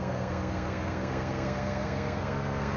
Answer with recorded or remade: remade